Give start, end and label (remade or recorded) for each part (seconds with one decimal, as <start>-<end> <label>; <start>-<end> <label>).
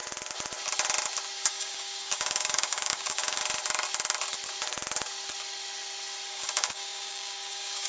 0.0-1.5 recorded; 1.5-3.4 remade; 3.4-6.3 recorded; 6.3-7.9 remade